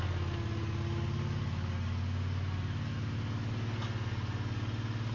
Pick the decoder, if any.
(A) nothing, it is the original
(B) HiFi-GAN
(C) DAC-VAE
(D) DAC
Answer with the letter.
A